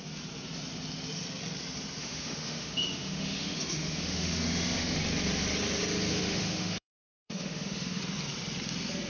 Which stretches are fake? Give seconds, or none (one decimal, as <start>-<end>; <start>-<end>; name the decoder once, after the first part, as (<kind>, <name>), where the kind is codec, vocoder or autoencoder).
2.0-5.1 (autoencoder, DAC-VAE); 6.1-8.0